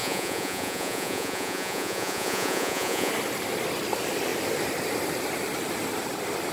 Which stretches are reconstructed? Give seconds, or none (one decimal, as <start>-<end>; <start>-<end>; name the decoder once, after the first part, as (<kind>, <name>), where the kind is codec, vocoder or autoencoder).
0.0-3.1 (vocoder, Vocos)

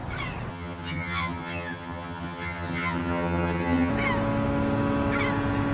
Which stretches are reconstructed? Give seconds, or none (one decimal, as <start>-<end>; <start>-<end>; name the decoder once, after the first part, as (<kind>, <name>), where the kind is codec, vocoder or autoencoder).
0.5-3.9 (vocoder, HiFi-GAN)

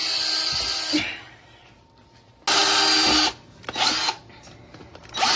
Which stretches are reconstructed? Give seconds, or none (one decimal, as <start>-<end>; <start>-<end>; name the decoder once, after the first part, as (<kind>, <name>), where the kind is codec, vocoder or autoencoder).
none

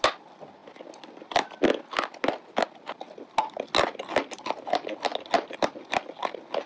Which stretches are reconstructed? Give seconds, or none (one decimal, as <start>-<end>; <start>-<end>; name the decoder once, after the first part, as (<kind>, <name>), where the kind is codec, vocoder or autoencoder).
none

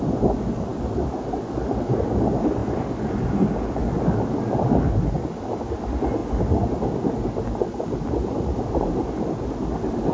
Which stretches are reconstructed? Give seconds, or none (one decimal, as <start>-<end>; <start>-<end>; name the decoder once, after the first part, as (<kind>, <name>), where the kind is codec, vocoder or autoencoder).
none

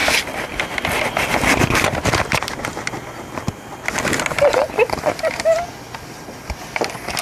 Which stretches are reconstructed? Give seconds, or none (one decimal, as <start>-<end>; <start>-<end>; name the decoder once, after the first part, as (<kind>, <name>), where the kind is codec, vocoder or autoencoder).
none